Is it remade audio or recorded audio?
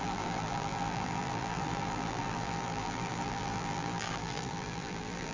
remade